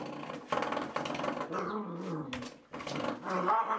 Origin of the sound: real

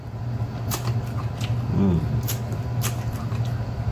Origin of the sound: real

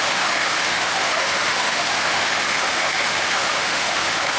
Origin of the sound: fake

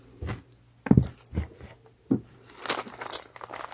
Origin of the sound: real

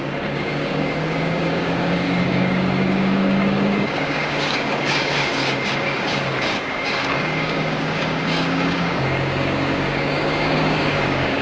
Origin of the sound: fake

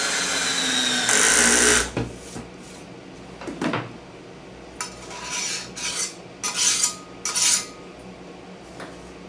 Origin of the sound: real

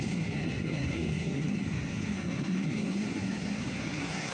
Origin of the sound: fake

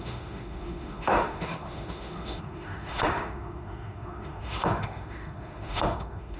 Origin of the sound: fake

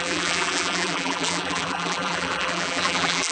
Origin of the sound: fake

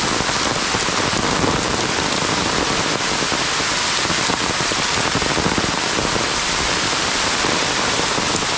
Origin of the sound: real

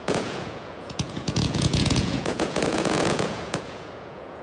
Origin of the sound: fake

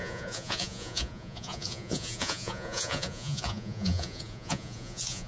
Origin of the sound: fake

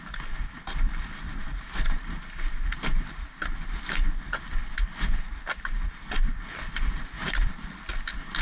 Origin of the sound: real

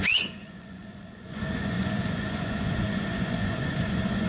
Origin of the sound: fake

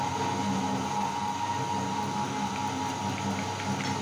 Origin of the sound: real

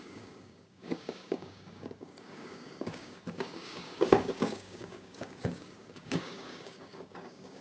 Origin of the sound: fake